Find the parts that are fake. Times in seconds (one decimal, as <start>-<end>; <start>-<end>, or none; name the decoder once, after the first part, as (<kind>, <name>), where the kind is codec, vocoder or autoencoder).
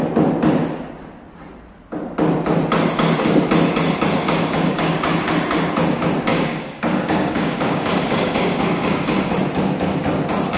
4.2-5.3 (codec, DAC); 6.3-9.3